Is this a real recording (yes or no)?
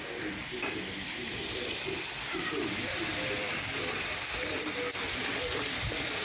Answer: no